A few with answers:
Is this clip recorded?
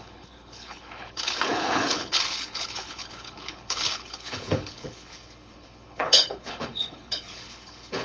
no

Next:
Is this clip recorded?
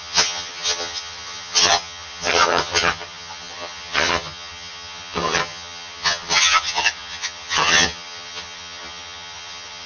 no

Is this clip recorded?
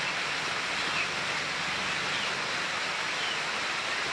yes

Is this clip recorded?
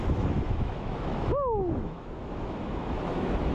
no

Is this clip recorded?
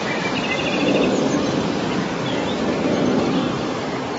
yes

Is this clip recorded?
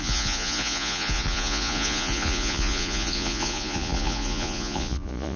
no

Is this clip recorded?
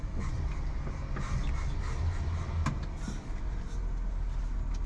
yes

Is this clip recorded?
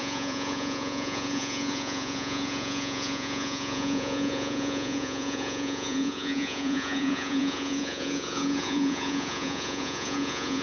no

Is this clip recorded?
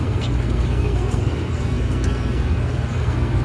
no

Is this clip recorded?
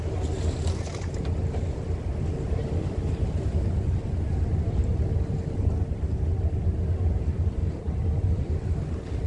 yes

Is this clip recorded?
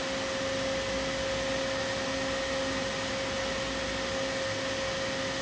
yes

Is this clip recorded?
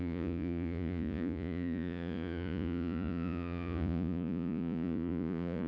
no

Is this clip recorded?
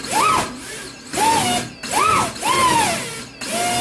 yes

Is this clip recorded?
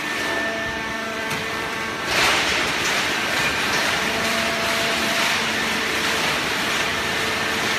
no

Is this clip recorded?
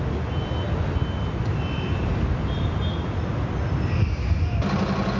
yes